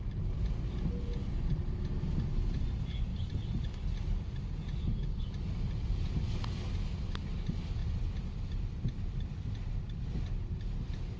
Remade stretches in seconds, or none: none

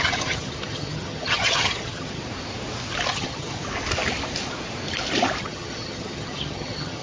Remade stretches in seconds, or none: 0.0-2.2; 3.1-3.6; 5.4-7.0

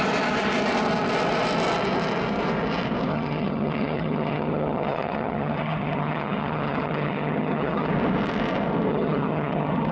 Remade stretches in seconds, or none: 3.1-7.9; 8.9-9.9

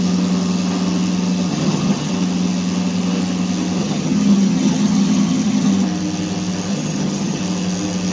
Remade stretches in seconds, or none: 1.5-2.1; 3.8-5.7; 6.7-7.4

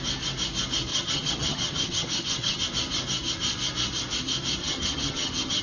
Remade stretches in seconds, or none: 0.9-2.6; 4.6-5.6